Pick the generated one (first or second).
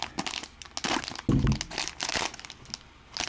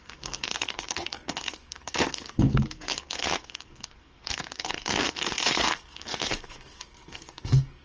second